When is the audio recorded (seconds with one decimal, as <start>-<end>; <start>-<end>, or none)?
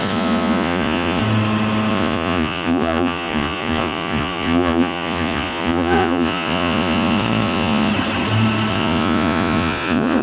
1.2-1.9; 7.9-8.7